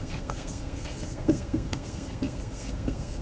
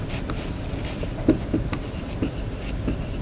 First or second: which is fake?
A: first